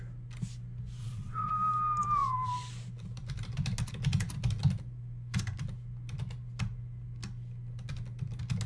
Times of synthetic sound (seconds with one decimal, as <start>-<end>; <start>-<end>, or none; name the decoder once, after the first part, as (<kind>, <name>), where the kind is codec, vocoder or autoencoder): 1.0-1.5 (vocoder, WaveNeXt)